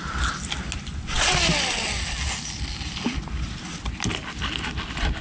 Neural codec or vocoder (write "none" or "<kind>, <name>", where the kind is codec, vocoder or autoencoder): none